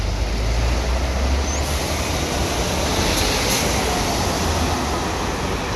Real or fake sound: real